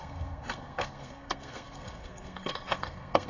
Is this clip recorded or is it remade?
remade